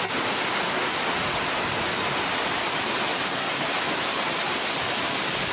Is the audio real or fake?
real